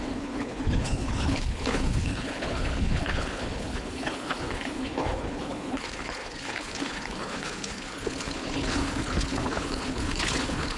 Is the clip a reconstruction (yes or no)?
yes